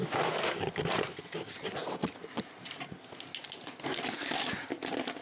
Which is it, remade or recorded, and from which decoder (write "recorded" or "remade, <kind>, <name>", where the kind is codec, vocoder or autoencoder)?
recorded